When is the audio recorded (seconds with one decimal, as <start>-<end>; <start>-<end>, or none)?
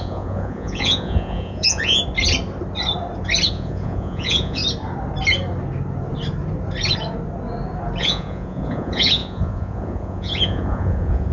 2.0-3.5; 4.6-8.0